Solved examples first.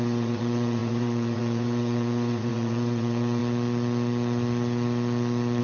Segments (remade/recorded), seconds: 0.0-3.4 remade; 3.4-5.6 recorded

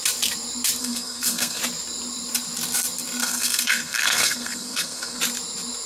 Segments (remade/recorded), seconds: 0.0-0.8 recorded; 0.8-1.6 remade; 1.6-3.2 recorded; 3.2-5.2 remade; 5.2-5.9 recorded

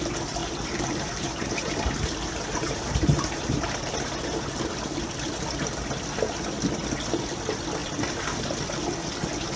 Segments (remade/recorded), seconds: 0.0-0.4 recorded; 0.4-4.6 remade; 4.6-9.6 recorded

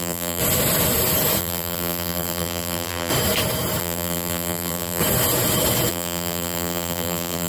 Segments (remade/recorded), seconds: 0.0-0.4 remade; 0.4-1.4 recorded; 1.4-3.1 remade; 3.1-3.8 recorded; 3.8-5.0 remade; 5.0-5.9 recorded; 5.9-7.5 remade